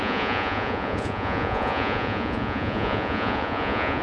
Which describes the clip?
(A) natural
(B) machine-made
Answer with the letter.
B